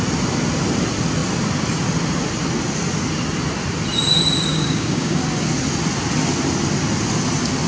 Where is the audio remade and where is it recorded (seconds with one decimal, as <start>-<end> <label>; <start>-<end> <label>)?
0.0-4.5 recorded; 4.5-5.2 remade; 5.2-7.7 recorded